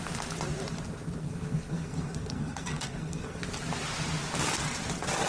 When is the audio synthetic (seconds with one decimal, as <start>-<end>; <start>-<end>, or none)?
1.2-3.4